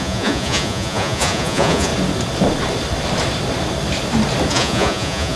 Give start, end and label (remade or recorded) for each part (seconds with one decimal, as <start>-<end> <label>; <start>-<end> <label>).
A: 0.0-1.9 remade; 1.9-4.5 recorded; 4.5-5.4 remade